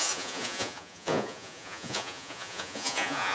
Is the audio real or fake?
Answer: fake